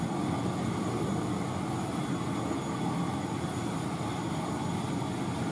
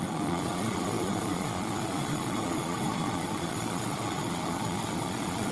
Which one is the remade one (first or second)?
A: second